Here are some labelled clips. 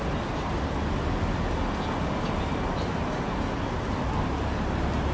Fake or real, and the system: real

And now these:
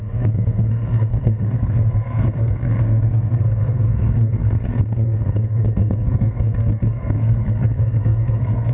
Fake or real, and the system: fake, codec, SNAC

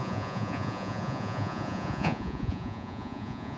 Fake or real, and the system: fake, vocoder, Vocos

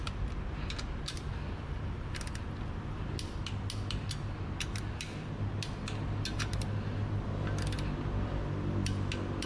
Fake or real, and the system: real